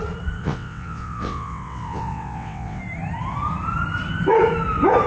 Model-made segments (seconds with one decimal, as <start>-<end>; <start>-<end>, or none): 0.4-2.8

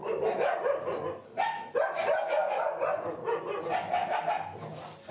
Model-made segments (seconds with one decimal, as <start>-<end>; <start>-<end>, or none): none

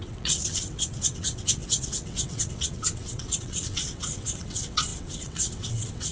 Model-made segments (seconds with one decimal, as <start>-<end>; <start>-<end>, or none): 0.0-6.1

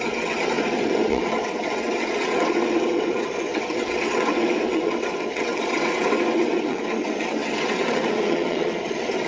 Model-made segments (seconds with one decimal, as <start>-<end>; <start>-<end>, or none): 0.0-9.3

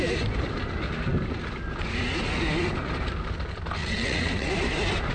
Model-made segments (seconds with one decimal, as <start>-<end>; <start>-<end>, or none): 3.8-4.5

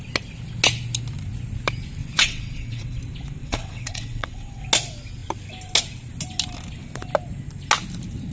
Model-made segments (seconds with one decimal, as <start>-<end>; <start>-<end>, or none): 2.0-3.0; 3.4-4.6